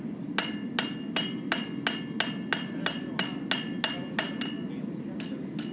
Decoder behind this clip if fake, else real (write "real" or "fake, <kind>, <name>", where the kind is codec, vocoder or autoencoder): real